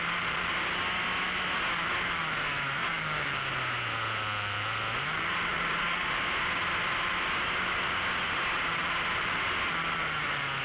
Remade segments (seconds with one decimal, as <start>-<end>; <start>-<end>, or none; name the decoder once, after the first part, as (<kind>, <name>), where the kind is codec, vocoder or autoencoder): 2.8-3.5 (codec, DAC); 5.5-6.1